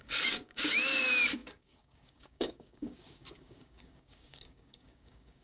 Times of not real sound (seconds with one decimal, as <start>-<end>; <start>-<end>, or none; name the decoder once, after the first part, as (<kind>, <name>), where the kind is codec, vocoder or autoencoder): 0.0-5.4 (codec, DAC)